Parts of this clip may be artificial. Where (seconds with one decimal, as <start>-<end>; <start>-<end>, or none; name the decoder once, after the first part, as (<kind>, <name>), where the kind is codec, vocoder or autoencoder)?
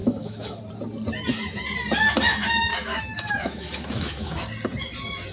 0.0-0.6 (autoencoder, DAC-VAE); 2.7-4.4